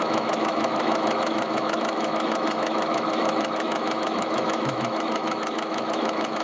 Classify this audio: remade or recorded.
remade